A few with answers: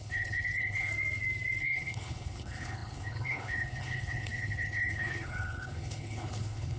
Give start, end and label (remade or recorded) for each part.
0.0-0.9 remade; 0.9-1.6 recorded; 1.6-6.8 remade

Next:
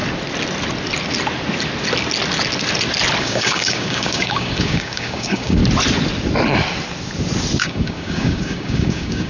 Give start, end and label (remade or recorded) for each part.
0.0-3.2 recorded; 3.2-5.6 remade; 5.6-7.6 recorded; 7.6-9.3 remade

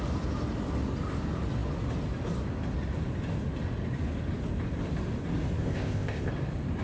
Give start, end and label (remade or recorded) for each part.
0.0-5.6 recorded; 5.6-6.3 remade; 6.3-6.8 recorded

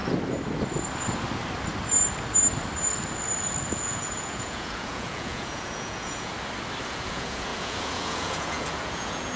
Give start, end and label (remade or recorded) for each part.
0.0-3.7 recorded; 3.7-6.3 remade; 6.3-6.9 recorded; 6.9-9.4 remade

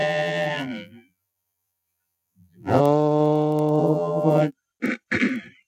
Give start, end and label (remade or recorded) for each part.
0.0-2.8 remade; 2.8-3.8 recorded; 3.8-4.5 remade; 4.5-5.7 recorded